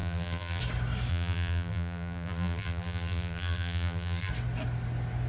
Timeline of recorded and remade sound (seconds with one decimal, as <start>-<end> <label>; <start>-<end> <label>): 0.0-0.6 remade; 0.6-1.1 recorded; 1.1-4.3 remade; 4.3-5.3 recorded